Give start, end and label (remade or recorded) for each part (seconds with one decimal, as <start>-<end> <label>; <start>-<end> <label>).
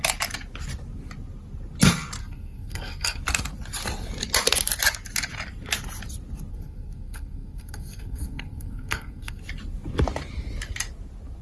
0.0-2.2 recorded; 2.2-3.2 remade; 3.2-6.5 recorded; 6.5-9.4 remade; 9.4-11.4 recorded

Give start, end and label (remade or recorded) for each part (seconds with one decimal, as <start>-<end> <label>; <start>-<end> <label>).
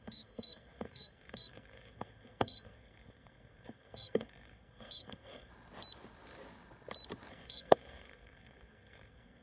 0.0-5.5 remade; 5.5-7.3 recorded; 7.3-9.4 remade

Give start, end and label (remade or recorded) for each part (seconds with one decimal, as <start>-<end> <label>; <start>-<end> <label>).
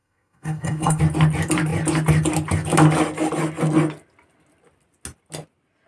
0.0-1.0 remade; 1.0-5.9 recorded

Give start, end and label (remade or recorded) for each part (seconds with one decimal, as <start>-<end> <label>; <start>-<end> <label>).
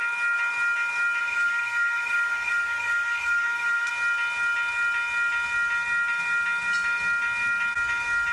0.0-1.2 recorded; 1.2-3.9 remade; 3.9-8.3 recorded